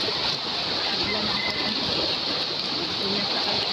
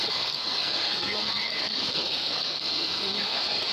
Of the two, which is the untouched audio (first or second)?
first